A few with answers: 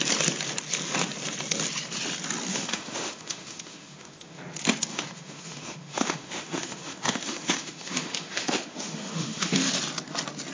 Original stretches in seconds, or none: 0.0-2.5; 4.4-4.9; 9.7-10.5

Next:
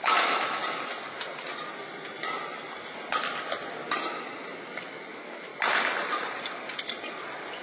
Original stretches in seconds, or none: 0.6-5.1; 5.5-7.6

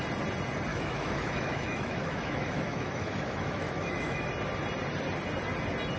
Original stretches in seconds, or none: 0.0-0.7; 4.3-6.0

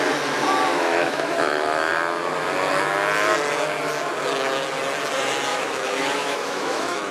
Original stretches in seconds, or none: 0.0-0.7; 1.9-5.5